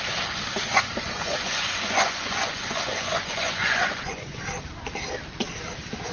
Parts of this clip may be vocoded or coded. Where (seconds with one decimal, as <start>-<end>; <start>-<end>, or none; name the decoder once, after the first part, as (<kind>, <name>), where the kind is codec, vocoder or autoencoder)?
0.7-4.4 (vocoder, Vocos)